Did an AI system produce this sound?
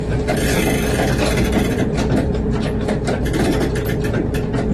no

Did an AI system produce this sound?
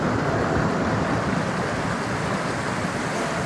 no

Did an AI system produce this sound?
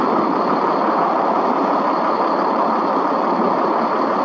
yes